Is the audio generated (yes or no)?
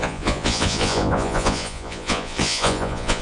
yes